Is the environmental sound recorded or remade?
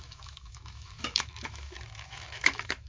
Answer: remade